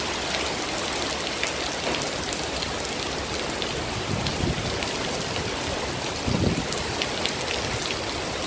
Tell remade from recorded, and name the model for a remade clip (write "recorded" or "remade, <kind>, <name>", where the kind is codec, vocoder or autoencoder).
recorded